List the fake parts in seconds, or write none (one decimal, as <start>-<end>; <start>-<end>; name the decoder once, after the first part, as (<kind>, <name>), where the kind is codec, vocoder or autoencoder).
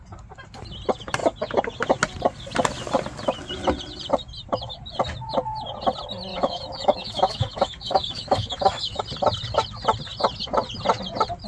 6.3-9.0 (autoencoder, DAC-VAE)